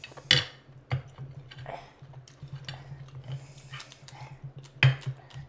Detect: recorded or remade recorded